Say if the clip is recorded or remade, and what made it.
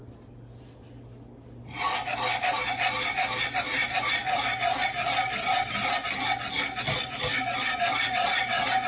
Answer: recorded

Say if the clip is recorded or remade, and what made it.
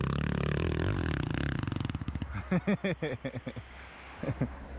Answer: recorded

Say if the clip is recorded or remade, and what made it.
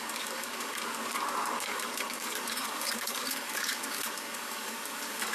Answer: remade, codec, DAC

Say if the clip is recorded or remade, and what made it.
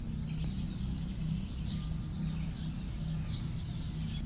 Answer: recorded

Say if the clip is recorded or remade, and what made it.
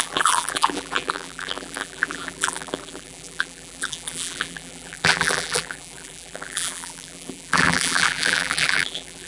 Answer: remade, vocoder, BigVGAN v2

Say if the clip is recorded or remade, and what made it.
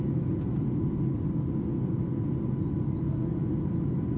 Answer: recorded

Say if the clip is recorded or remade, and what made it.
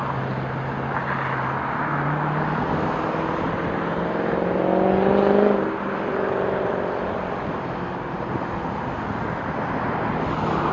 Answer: recorded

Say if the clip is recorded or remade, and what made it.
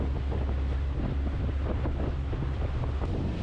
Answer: recorded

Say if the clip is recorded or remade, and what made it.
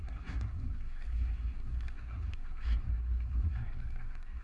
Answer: remade, codec, SNAC